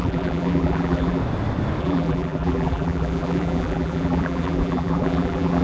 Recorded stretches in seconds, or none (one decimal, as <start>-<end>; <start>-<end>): 1.2-1.8

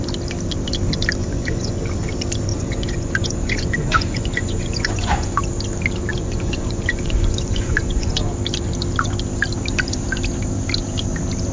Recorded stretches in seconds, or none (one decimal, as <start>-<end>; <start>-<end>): 0.0-1.2; 1.8-2.5; 5.4-6.1; 8.2-11.5